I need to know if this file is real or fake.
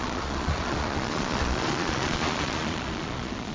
fake